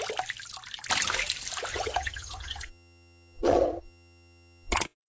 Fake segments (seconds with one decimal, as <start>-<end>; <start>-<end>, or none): 1.7-4.8